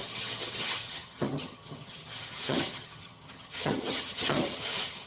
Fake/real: fake